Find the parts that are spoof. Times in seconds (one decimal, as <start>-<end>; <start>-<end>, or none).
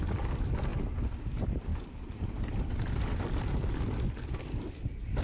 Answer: 0.0-0.7; 1.2-5.2